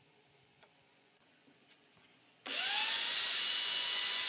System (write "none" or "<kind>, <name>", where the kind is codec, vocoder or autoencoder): vocoder, Vocos